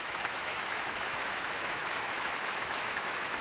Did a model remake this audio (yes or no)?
yes